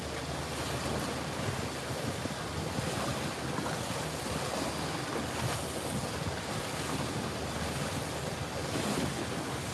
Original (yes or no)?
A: yes